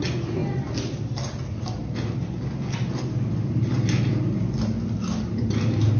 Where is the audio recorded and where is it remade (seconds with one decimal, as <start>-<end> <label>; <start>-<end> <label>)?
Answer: 0.0-6.0 recorded